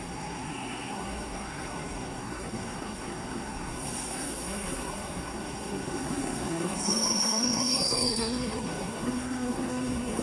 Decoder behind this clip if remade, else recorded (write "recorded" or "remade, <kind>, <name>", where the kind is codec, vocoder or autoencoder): remade, codec, SNAC